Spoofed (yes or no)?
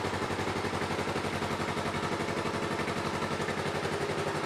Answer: yes